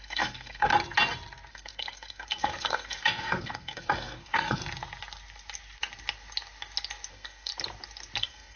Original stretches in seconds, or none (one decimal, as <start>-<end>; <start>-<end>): 0.7-1.5; 4.6-7.1; 7.5-8.2